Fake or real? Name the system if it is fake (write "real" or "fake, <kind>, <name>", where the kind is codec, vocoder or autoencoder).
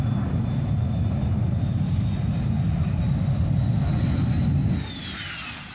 real